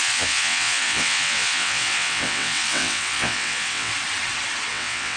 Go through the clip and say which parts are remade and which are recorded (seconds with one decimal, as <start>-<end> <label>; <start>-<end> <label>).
0.0-3.9 remade; 3.9-4.7 recorded; 4.7-5.2 remade